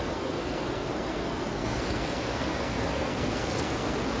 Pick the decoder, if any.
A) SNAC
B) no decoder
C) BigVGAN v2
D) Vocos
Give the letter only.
A